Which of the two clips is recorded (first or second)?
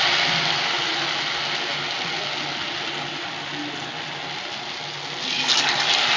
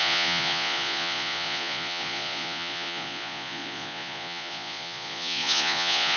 first